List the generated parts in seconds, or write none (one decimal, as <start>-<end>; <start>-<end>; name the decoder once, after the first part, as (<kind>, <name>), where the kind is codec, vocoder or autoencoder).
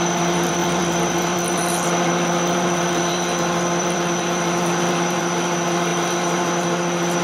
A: 0.0-7.2 (vocoder, BigVGAN v2)